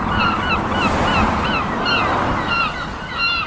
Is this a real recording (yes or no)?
yes